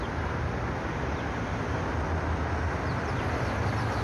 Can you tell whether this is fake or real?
real